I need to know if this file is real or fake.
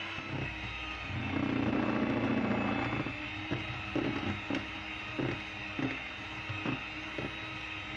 real